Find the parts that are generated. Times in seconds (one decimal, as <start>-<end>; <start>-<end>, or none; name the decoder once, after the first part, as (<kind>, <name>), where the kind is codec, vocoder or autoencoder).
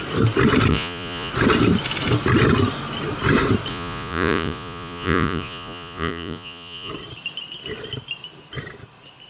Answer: 0.7-1.3 (vocoder, Vocos); 3.7-6.9